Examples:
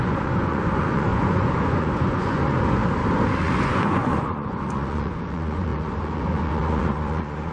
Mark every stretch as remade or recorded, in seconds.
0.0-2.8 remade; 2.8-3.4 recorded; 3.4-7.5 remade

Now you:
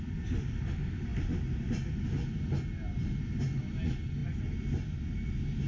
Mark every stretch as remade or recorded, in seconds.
0.0-5.7 recorded

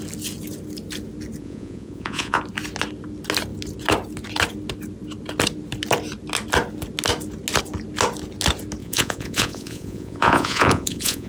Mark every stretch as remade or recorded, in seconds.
0.0-1.4 recorded; 1.4-2.4 remade; 2.4-8.8 recorded; 8.8-11.3 remade